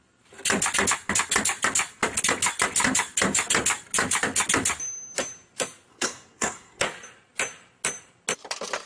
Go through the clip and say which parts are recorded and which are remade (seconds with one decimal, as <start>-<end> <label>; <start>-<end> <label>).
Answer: 0.0-5.9 recorded; 5.9-6.8 remade; 6.8-8.9 recorded